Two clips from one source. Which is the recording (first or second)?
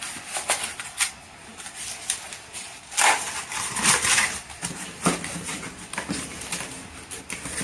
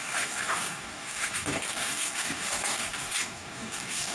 first